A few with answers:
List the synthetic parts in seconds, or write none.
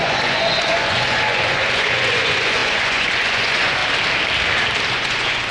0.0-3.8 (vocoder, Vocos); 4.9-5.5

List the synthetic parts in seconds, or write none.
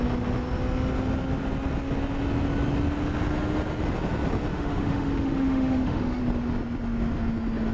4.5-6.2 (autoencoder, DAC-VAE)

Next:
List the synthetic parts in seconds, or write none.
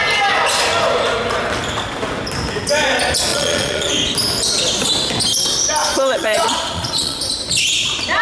3.3-3.9 (vocoder, Vocos); 5.8-7.2